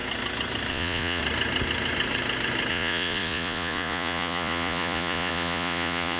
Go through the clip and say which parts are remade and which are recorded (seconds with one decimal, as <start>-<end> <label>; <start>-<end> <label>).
0.0-0.7 recorded; 0.7-1.2 remade; 1.2-2.7 recorded; 2.7-6.2 remade